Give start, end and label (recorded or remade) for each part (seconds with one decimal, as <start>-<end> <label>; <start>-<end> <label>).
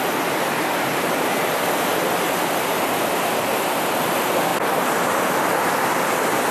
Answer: 0.0-6.5 recorded